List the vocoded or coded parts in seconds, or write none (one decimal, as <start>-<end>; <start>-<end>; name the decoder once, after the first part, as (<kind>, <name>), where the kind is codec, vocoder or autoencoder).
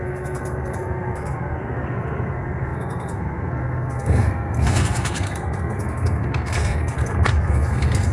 0.0-8.1 (codec, SNAC)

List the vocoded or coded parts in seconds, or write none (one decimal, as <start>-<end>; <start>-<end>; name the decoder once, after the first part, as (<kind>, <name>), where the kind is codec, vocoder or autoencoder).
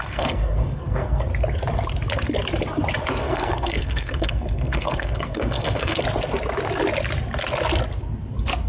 0.0-1.3 (codec, SNAC); 3.2-6.0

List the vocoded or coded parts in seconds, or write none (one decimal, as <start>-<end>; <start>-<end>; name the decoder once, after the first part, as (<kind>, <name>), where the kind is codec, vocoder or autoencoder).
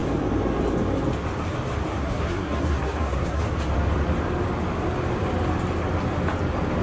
1.9-3.4 (codec, SNAC)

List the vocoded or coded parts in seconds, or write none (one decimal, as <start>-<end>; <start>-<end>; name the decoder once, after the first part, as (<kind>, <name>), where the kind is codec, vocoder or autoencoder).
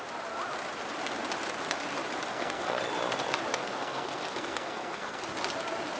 2.3-2.8 (codec, SNAC); 3.5-5.2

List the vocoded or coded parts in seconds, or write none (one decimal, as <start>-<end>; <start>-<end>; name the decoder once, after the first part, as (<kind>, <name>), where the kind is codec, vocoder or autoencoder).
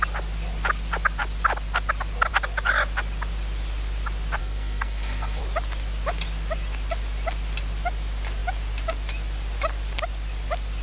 4.4-5.4 (codec, SNAC)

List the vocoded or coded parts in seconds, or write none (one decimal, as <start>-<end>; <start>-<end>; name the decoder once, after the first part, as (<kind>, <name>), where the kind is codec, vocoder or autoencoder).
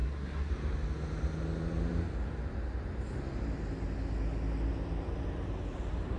0.0-0.5 (codec, SNAC)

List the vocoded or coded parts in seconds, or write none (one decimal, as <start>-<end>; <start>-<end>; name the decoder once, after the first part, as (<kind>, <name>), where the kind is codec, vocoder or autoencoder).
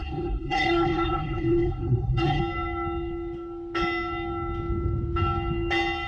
0.0-2.4 (codec, SNAC)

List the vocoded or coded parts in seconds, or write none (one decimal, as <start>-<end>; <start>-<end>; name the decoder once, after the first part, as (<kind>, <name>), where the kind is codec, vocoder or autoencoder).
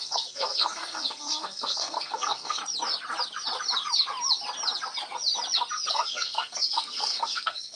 0.0-2.6 (codec, SNAC); 5.9-7.7